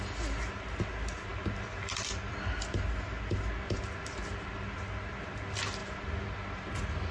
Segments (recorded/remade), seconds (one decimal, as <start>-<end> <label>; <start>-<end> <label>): 0.0-1.3 recorded; 1.3-2.6 remade; 2.6-7.1 recorded